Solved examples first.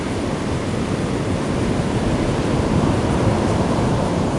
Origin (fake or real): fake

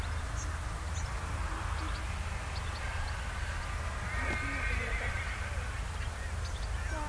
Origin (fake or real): real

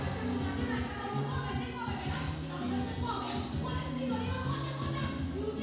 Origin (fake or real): real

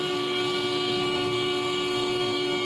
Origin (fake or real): fake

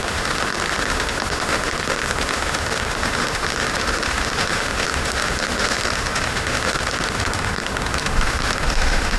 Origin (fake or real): fake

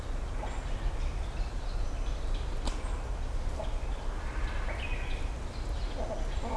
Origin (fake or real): real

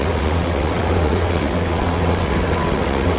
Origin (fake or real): fake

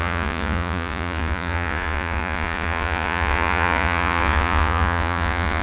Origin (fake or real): fake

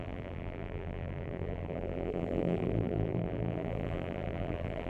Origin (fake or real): fake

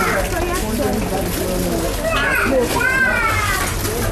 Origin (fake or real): real